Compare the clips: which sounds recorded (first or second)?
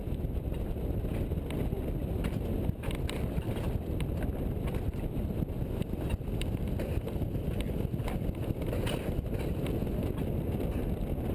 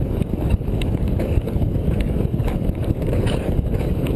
first